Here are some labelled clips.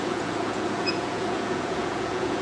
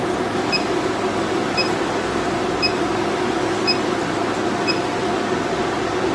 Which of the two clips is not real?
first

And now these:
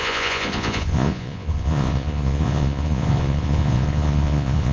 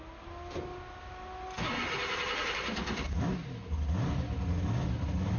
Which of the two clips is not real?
first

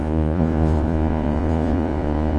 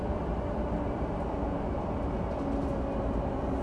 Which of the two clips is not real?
first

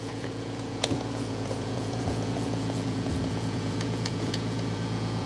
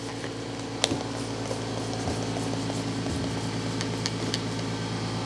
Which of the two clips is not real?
first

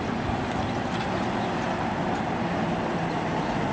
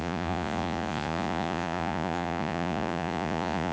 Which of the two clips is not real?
second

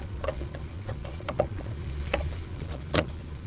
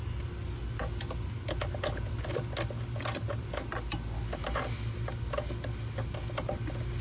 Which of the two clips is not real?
first